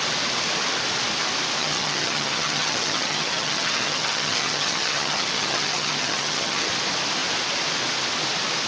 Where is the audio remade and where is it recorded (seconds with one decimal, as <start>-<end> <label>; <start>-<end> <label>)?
0.0-1.6 recorded; 1.6-6.7 remade; 6.7-8.7 recorded